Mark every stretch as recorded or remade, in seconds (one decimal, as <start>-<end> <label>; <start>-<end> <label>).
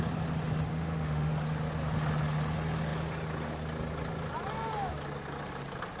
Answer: 0.0-0.7 recorded; 0.7-1.3 remade; 1.3-6.0 recorded